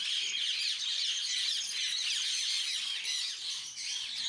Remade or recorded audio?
recorded